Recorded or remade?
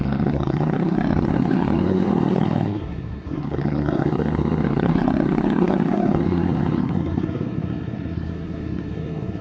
remade